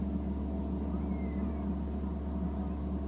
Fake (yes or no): no